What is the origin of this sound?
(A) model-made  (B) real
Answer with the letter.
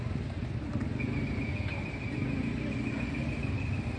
B